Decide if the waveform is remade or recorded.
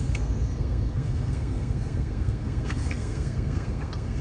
remade